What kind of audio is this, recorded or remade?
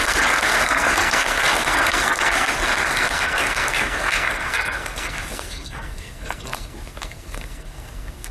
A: remade